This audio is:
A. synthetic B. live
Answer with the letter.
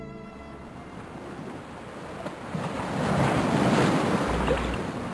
B